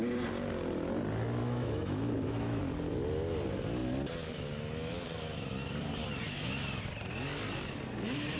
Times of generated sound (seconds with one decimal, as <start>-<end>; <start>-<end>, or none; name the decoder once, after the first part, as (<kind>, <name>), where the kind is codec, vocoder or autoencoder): 1.4-2.6 (autoencoder, DAC-VAE)